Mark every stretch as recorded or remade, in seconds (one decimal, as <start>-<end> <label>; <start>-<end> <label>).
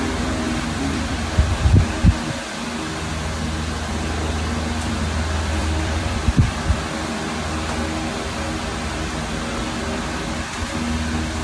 0.0-5.6 recorded; 5.6-6.5 remade; 6.5-11.4 recorded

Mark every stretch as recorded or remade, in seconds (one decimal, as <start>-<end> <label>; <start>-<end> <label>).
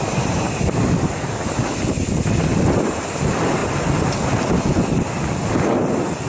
0.0-3.6 recorded; 3.6-4.6 remade; 4.6-6.3 recorded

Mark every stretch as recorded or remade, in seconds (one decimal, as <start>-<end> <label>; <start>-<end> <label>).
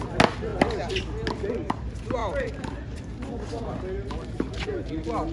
0.0-2.2 recorded; 2.2-3.5 remade; 3.5-5.3 recorded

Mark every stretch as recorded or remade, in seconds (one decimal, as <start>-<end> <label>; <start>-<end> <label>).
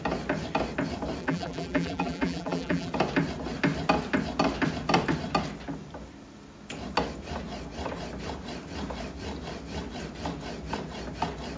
0.0-1.2 recorded; 1.2-2.9 remade; 2.9-11.6 recorded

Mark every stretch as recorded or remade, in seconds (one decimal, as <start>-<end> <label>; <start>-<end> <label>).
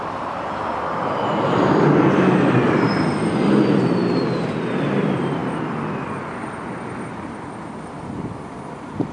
0.0-9.1 remade